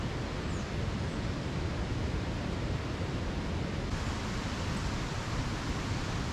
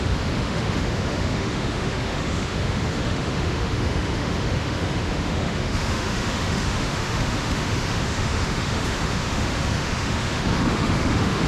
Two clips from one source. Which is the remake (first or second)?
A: second